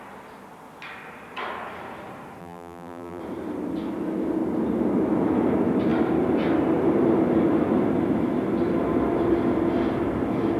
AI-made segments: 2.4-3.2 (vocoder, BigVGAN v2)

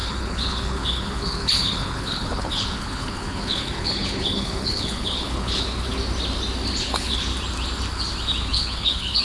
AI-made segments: 0.0-5.9 (codec, HILCodec); 6.8-7.3; 8.4-9.2

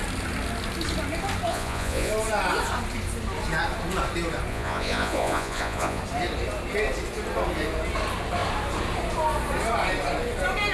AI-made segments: 1.5-2.1 (vocoder, Vocos); 4.5-6.0

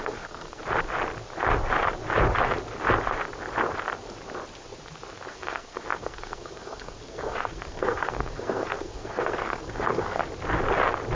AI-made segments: 0.0-0.6 (codec, SNAC); 5.3-10.2

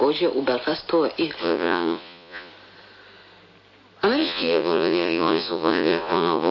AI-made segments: 1.4-2.5 (vocoder, Vocos); 4.2-6.5

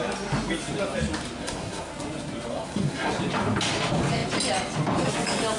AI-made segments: 1.4-1.9 (codec, SNAC); 2.5-3.1

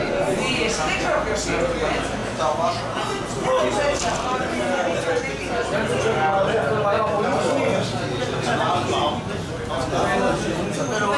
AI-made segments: none

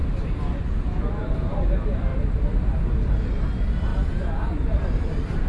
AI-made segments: 0.0-0.6 (vocoder, BigVGAN v2); 2.1-3.1; 3.9-5.5